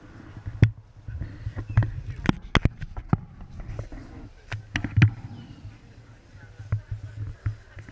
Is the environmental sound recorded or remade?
recorded